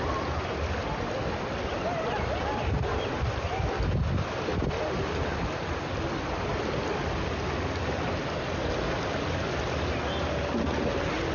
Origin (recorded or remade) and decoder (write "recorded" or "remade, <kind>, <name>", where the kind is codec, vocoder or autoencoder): recorded